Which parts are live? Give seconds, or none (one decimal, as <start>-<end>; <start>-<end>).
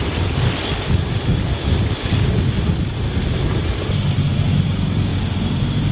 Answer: 0.0-5.9